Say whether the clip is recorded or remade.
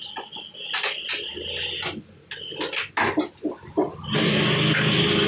recorded